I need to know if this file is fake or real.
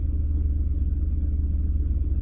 real